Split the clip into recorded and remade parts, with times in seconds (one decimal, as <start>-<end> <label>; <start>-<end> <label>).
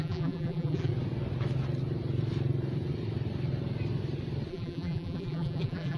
0.0-0.9 remade; 0.9-4.5 recorded; 4.5-6.0 remade